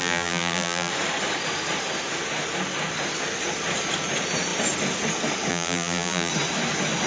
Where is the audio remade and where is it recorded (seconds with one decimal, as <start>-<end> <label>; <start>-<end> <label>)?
0.0-0.9 remade; 0.9-5.5 recorded; 5.5-6.3 remade; 6.3-7.1 recorded